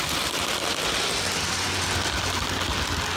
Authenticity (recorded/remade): recorded